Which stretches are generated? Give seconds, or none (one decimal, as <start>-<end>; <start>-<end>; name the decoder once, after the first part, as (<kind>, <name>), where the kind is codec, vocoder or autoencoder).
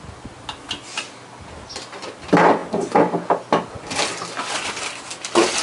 none